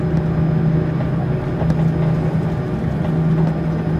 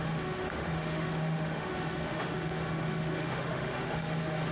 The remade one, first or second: second